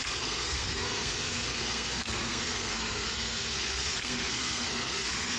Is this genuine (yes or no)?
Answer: no